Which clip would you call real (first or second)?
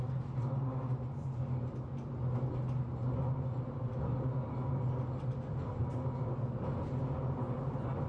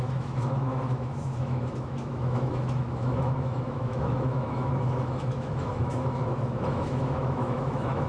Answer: first